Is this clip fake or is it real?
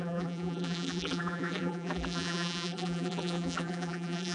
fake